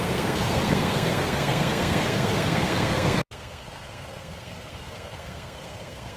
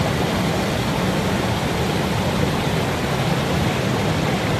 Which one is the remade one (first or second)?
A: first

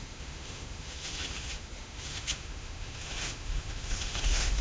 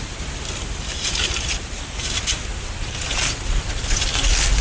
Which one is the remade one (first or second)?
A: first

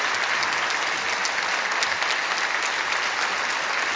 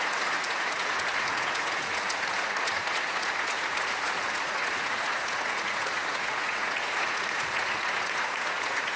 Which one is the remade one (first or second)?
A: second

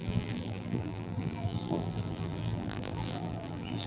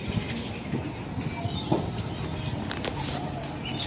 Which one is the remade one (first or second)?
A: first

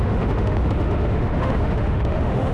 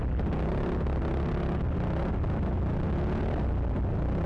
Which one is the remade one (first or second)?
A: first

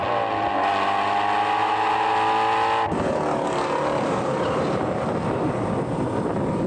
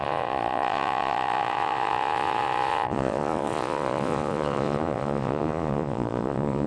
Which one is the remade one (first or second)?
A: second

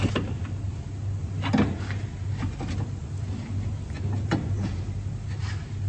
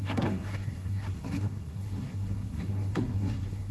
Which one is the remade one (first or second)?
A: second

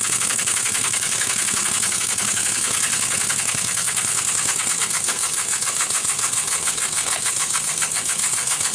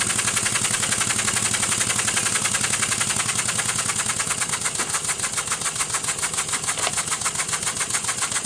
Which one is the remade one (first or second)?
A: first